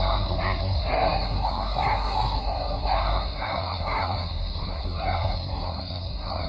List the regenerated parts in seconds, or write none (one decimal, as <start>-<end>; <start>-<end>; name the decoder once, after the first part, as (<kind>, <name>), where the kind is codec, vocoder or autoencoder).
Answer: 0.0-6.5 (codec, SNAC)